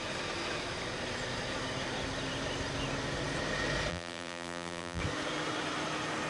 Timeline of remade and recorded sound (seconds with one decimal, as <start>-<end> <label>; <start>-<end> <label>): 0.0-3.9 recorded; 3.9-5.0 remade; 5.0-6.3 recorded